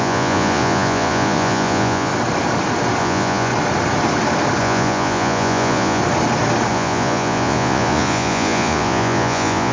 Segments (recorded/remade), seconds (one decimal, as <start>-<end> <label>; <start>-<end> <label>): 0.0-2.1 remade; 2.1-3.0 recorded; 3.0-3.5 remade; 3.5-4.6 recorded; 4.6-6.0 remade; 6.0-6.7 recorded; 6.7-9.7 remade